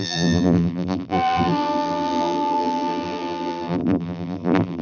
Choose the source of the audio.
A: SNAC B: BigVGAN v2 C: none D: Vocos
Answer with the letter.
B